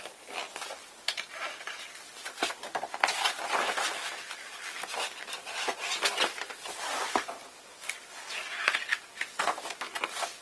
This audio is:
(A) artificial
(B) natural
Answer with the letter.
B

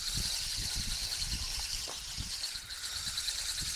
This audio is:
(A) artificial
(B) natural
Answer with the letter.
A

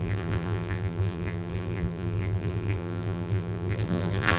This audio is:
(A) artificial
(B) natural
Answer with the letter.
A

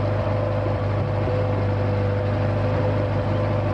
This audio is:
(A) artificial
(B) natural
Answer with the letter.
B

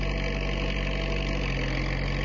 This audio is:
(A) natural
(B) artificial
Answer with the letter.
A